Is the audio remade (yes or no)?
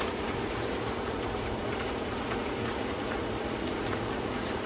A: yes